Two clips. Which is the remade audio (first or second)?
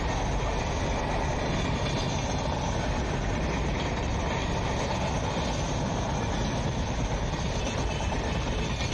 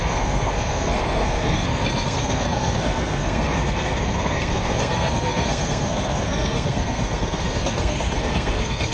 second